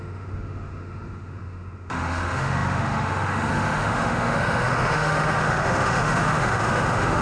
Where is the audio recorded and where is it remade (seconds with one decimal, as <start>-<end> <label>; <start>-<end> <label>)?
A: 0.0-7.2 remade